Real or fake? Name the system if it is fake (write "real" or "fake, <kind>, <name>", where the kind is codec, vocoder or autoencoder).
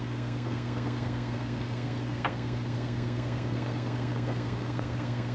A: fake, codec, SNAC